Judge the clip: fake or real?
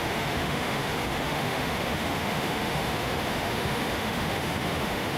fake